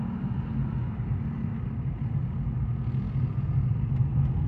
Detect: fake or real real